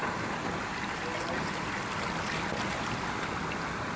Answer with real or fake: real